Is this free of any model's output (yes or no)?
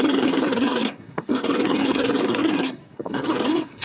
no